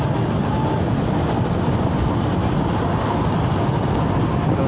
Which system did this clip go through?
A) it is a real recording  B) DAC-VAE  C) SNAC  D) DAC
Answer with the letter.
A